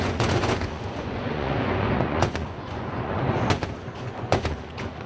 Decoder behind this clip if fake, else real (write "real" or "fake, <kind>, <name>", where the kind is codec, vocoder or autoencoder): fake, vocoder, Vocos